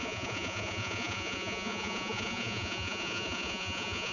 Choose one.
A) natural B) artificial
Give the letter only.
B